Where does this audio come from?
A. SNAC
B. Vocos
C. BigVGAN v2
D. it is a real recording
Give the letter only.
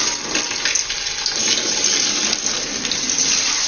D